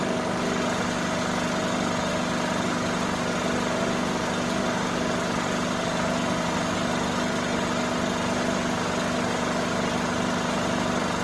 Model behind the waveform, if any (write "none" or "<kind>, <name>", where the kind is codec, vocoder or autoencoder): none